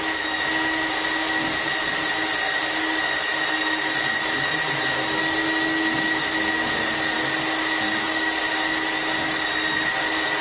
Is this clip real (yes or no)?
yes